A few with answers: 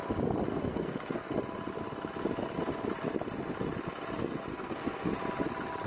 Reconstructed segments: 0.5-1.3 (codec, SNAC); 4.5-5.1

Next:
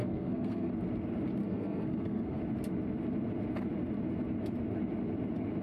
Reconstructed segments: 0.0-0.7 (codec, SNAC); 1.4-2.4